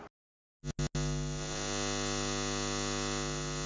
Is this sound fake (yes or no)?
no